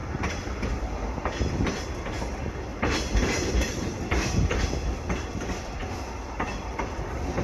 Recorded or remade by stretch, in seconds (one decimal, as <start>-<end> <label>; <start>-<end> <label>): 0.0-7.4 remade